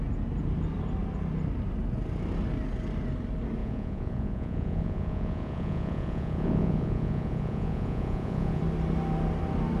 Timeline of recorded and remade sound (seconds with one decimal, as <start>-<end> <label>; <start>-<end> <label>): 0.0-3.6 recorded; 3.6-8.6 remade; 8.6-9.8 recorded